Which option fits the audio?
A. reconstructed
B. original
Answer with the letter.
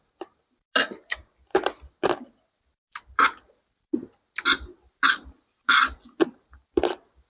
B